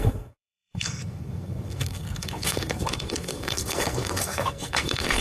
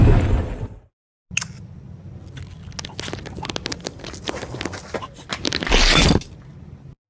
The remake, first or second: first